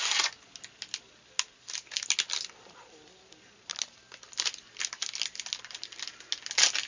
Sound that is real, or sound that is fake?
real